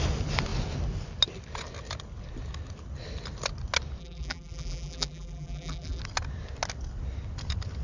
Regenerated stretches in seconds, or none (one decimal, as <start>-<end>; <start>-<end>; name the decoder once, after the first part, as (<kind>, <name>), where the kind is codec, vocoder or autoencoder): 4.0-6.0 (vocoder, BigVGAN v2)